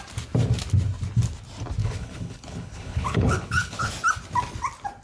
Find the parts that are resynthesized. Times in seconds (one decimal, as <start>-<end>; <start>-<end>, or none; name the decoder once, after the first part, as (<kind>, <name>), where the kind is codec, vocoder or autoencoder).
1.8-3.9 (codec, HILCodec)